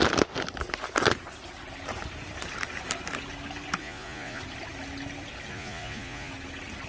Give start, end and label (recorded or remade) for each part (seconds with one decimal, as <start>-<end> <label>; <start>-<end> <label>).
0.0-3.8 recorded; 3.8-4.4 remade; 4.4-5.5 recorded; 5.5-6.3 remade; 6.3-6.9 recorded